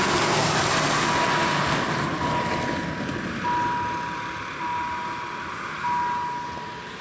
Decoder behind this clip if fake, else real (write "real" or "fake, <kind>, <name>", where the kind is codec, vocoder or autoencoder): real